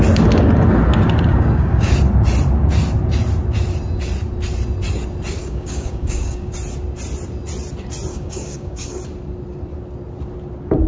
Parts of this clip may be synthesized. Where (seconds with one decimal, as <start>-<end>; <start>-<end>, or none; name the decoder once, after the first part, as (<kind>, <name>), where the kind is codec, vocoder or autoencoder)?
1.3-1.9 (codec, DAC); 5.4-6.5; 8.1-9.0